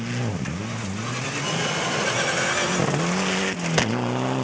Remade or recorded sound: recorded